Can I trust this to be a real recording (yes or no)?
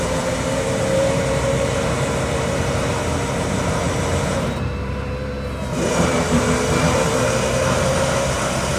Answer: no